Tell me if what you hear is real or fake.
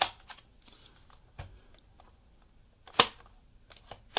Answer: real